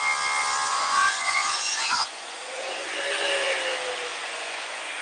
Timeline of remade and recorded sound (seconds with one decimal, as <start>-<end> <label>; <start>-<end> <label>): 0.0-0.7 recorded; 0.7-3.0 remade; 3.0-4.1 recorded; 4.1-5.0 remade